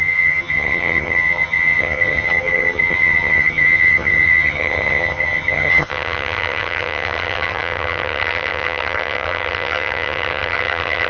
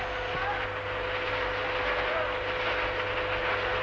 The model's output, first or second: first